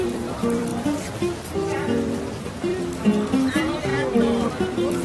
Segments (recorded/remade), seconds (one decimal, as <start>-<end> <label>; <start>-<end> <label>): 0.0-2.7 remade; 2.7-3.5 recorded; 3.5-3.9 remade; 3.9-4.5 recorded; 4.5-5.0 remade

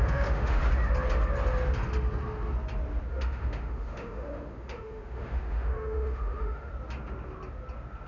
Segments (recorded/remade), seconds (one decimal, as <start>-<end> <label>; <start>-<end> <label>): 0.0-0.6 remade; 0.6-3.1 recorded; 3.1-6.7 remade; 6.7-8.1 recorded

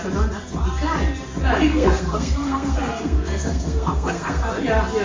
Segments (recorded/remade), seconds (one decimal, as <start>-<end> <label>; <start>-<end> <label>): 0.0-1.7 recorded; 1.7-4.5 remade; 4.5-5.0 recorded

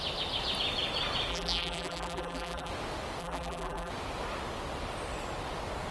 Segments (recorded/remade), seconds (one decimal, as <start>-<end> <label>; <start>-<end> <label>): 0.0-1.3 recorded; 1.3-2.7 remade; 2.7-3.2 recorded; 3.2-3.9 remade; 3.9-5.9 recorded

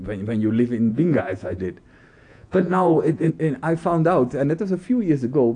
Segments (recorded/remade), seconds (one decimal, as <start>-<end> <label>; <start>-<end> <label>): 0.0-0.9 recorded; 0.9-1.6 remade; 1.6-2.3 recorded; 2.3-3.3 remade; 3.3-5.6 recorded

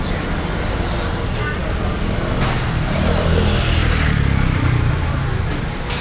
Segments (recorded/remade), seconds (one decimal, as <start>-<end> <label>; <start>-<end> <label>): 0.0-6.0 recorded

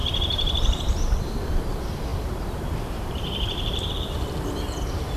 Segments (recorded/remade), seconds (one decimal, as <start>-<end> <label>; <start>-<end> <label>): 0.0-5.2 remade